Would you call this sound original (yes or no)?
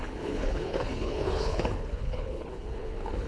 no